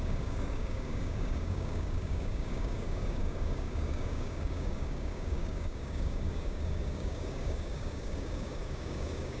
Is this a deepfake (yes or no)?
yes